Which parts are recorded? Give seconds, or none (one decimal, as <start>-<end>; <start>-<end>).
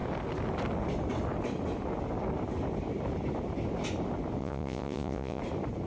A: 0.0-4.4; 5.4-5.9